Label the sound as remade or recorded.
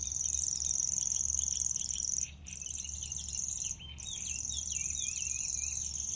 recorded